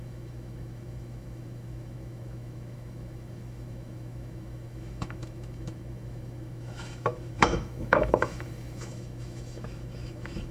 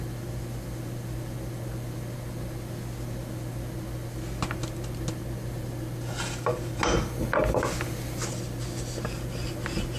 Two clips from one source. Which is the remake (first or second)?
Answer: first